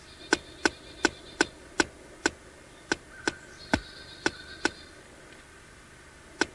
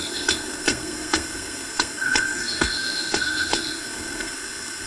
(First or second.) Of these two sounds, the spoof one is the second